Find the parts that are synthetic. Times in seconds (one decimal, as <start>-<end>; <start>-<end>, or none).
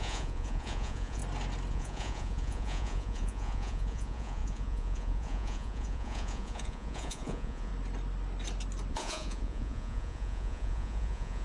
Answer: 0.0-1.2; 1.7-7.7; 8.9-11.4